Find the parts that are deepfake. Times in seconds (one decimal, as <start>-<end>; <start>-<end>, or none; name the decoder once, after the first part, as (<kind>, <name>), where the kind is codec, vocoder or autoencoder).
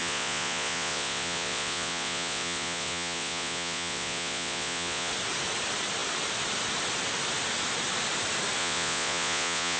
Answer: 0.0-5.1 (vocoder, Vocos); 8.6-9.8